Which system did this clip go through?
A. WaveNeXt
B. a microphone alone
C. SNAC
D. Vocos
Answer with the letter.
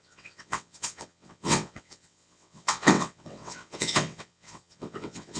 A